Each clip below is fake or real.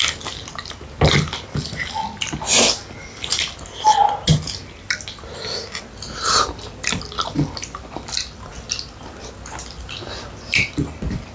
real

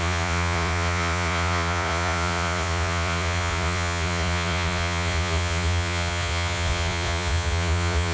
fake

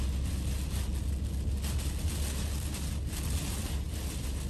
real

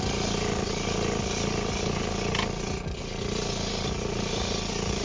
real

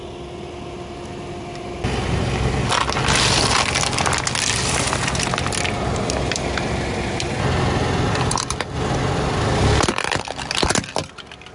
real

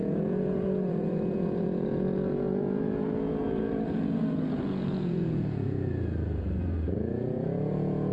fake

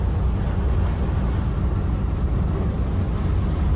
real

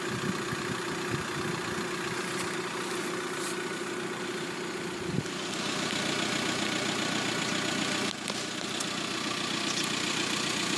real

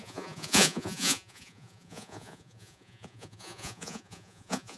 fake